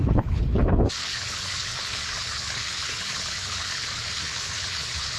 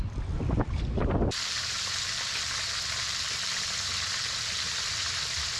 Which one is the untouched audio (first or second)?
second